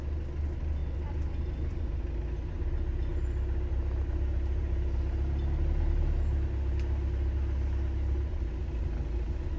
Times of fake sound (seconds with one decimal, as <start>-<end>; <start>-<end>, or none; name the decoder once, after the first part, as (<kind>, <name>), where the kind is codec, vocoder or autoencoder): 0.8-1.8 (vocoder, BigVGAN v2)